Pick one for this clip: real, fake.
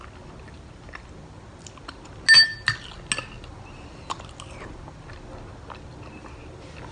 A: real